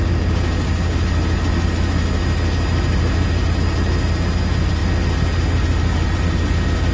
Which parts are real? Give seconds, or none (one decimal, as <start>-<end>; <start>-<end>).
0.0-6.9

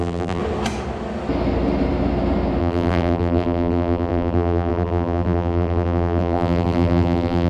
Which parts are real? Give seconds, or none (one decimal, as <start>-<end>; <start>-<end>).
0.4-2.6

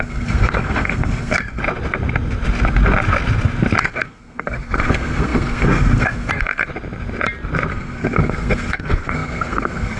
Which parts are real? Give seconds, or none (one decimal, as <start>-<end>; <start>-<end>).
1.6-3.8; 6.7-7.7

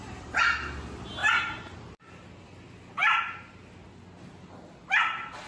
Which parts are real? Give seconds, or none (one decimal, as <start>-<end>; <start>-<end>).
0.0-5.5

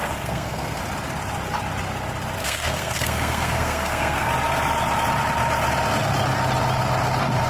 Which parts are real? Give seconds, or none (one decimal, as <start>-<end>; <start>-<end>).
0.8-2.4; 4.3-7.5

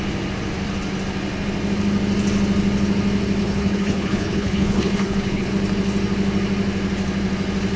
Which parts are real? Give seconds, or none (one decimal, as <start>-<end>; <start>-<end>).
0.0-3.4; 5.5-7.8

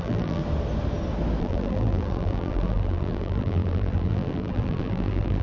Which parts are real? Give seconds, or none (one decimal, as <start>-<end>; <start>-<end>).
0.4-1.4